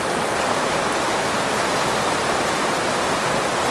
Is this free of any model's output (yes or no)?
yes